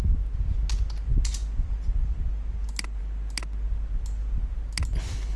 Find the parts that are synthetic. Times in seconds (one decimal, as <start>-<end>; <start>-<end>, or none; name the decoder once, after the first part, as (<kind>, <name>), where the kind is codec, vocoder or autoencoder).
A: none